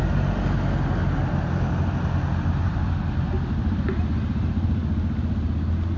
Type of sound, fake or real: real